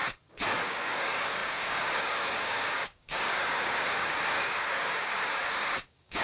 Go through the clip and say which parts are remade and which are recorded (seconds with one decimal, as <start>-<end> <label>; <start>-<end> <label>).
0.0-0.6 recorded; 0.6-6.2 remade